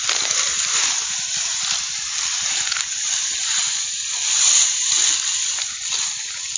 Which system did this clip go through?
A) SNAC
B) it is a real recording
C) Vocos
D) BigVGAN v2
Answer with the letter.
B